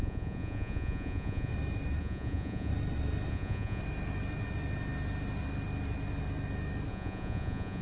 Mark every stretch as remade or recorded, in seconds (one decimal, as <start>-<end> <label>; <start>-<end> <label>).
0.0-1.5 remade; 1.5-2.0 recorded; 2.0-2.7 remade; 2.7-3.3 recorded; 3.3-3.8 remade; 3.8-6.9 recorded; 6.9-7.8 remade